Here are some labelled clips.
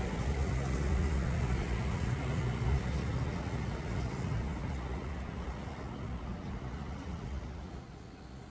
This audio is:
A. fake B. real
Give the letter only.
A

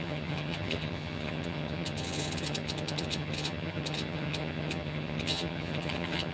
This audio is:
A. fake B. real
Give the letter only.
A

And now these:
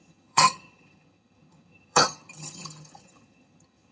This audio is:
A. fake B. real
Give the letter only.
A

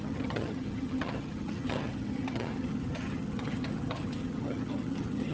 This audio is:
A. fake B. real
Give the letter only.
A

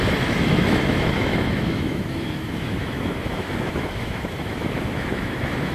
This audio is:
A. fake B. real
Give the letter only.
A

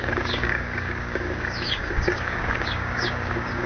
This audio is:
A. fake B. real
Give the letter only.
A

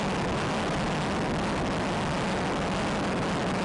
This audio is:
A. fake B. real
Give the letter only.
B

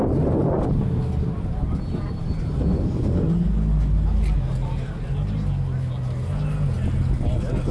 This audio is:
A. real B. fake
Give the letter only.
A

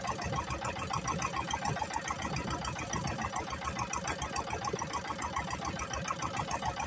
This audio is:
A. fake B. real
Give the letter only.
B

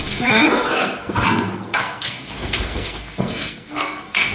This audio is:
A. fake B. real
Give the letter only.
A